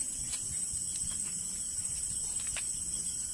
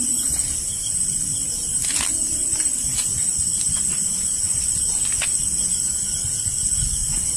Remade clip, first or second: first